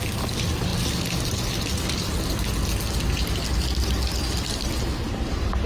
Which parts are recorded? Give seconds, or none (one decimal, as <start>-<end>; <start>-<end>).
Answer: 0.0-5.7